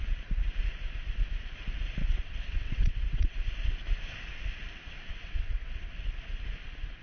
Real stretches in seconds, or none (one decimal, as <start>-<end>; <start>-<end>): 0.0-2.0; 3.7-5.1; 5.9-7.0